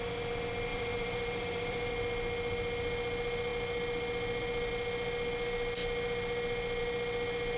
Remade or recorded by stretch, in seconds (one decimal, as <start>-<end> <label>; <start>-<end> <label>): 0.0-0.7 recorded; 0.7-1.9 remade; 1.9-7.6 recorded